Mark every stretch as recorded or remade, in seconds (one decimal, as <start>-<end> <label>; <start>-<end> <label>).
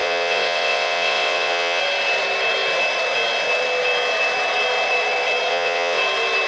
0.0-1.8 remade; 1.8-5.5 recorded; 5.5-6.0 remade; 6.0-6.5 recorded